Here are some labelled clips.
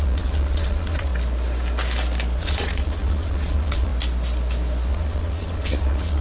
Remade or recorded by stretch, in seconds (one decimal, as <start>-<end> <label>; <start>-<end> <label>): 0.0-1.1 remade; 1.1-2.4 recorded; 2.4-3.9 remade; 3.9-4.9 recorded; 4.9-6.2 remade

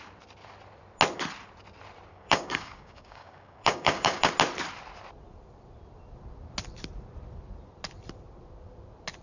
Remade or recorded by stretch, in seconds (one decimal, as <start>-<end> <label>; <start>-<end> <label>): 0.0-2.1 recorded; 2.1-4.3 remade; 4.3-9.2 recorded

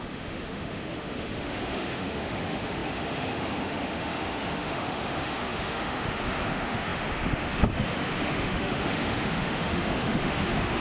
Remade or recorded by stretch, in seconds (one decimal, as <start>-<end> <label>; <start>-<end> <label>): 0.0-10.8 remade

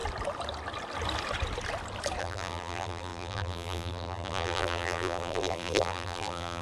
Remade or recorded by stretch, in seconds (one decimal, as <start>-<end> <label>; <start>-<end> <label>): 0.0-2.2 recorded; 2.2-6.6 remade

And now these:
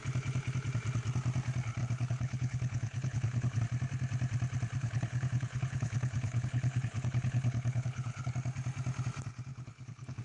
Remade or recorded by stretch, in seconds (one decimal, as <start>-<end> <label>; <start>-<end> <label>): 0.0-1.8 recorded; 1.8-3.6 remade; 3.6-4.8 recorded; 4.8-8.3 remade; 8.3-9.5 recorded; 9.5-10.2 remade

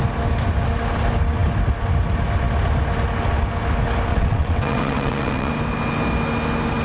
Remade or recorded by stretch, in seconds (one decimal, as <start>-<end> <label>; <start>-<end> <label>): 0.0-4.1 recorded; 4.1-5.5 remade; 5.5-6.8 recorded

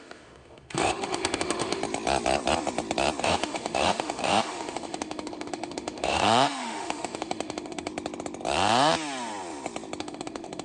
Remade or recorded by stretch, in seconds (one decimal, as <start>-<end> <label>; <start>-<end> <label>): 0.0-1.8 remade; 1.8-3.2 recorded; 3.2-7.9 remade; 7.9-10.0 recorded; 10.0-10.6 remade

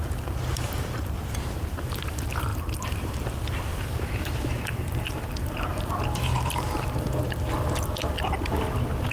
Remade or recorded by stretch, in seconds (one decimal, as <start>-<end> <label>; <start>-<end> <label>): 0.0-2.5 recorded; 2.5-3.3 remade; 3.3-3.7 recorded; 3.7-8.1 remade; 8.1-9.1 recorded